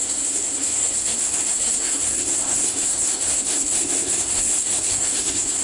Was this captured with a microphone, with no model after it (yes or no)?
no